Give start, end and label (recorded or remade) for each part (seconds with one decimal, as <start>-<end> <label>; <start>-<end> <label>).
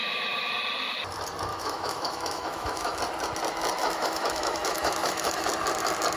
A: 0.0-0.5 remade; 0.5-1.5 recorded; 1.5-3.0 remade; 3.0-3.8 recorded; 3.8-5.5 remade; 5.5-6.2 recorded